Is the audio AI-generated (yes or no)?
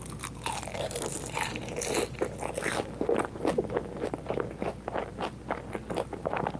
no